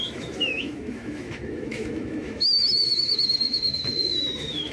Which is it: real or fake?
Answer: fake